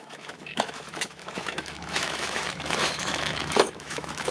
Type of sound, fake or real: fake